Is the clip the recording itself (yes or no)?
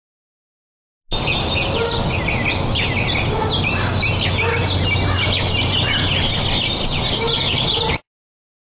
yes